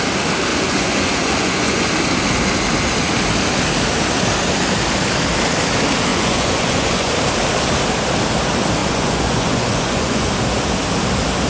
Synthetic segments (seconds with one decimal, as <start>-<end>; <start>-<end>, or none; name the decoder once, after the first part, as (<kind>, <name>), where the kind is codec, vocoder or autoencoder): 0.5-1.9 (vocoder, Vocos); 6.1-7.1; 8.8-10.3